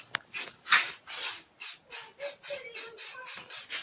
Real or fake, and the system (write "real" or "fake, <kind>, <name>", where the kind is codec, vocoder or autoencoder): real